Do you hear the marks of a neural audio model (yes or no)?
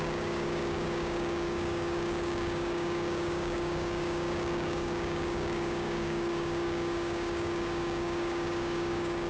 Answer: yes